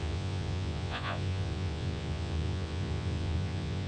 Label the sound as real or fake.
fake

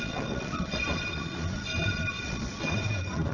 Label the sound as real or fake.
fake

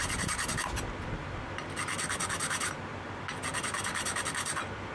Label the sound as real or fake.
real